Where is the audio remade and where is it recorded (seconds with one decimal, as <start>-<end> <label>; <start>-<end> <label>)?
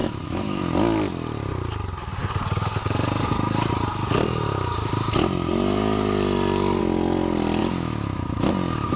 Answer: 0.0-0.6 remade; 0.6-7.6 recorded; 7.6-8.5 remade; 8.5-9.0 recorded